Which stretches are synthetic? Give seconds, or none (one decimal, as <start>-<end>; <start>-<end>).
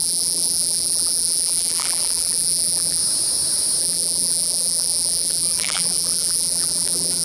0.0-3.0; 3.8-7.2